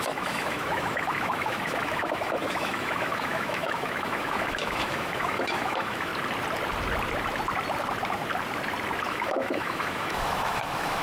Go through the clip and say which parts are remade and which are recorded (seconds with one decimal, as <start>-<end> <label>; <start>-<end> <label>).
0.0-6.1 remade; 6.1-9.1 recorded; 9.1-11.0 remade